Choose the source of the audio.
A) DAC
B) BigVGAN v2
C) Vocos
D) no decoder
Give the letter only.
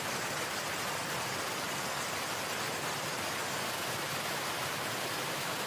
B